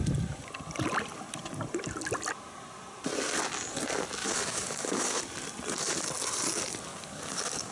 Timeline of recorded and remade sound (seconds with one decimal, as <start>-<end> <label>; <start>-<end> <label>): 0.0-4.2 recorded; 4.2-5.2 remade; 5.2-6.9 recorded; 6.9-7.7 remade